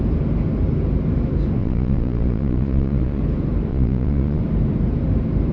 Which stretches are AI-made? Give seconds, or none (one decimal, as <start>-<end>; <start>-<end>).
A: 1.6-3.2; 3.7-4.4